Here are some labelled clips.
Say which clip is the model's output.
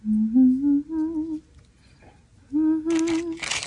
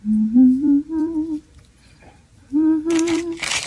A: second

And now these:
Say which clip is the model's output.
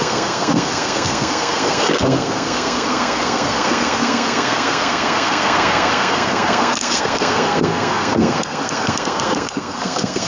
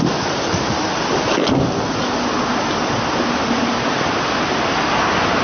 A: first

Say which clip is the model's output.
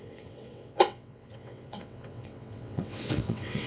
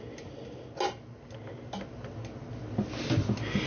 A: first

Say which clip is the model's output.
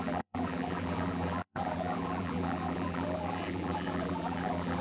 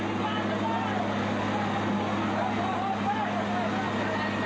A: first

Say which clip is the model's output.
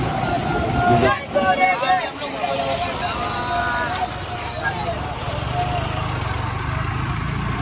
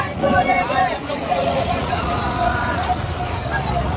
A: second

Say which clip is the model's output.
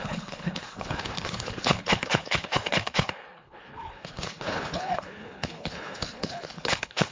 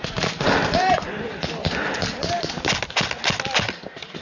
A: first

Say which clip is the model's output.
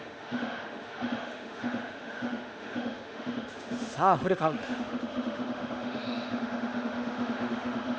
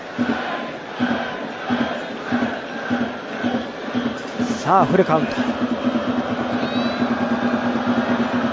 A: first